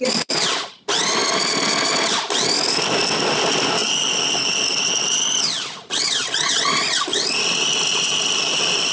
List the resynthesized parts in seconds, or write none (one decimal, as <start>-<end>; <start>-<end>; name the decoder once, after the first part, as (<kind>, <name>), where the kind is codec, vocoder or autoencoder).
none